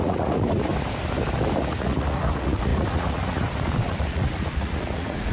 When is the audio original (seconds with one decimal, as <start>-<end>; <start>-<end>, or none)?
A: 0.7-1.6